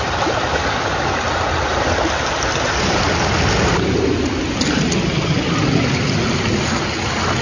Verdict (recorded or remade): recorded